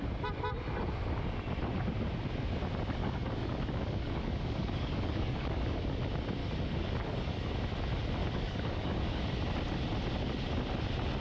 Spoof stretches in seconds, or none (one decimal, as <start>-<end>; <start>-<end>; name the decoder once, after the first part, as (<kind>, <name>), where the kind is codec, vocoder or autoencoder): 3.0-5.8 (codec, DAC); 6.4-7.5; 8.2-9.2